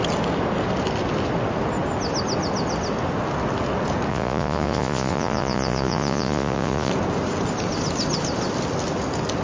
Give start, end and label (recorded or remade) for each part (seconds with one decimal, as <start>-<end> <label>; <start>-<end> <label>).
0.0-4.1 recorded; 4.1-6.9 remade; 6.9-9.4 recorded